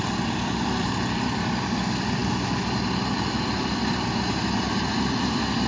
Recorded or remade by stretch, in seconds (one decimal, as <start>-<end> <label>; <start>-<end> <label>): 0.0-2.2 remade; 2.2-5.7 recorded